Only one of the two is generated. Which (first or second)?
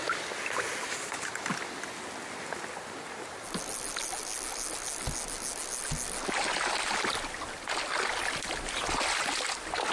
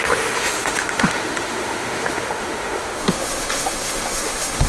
second